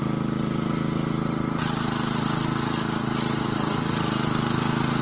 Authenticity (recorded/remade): recorded